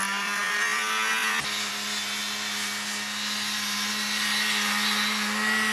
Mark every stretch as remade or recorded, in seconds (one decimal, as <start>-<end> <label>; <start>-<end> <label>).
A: 0.0-5.7 recorded